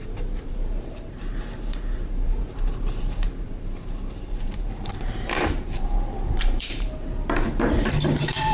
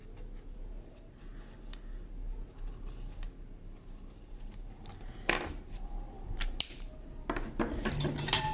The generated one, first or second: first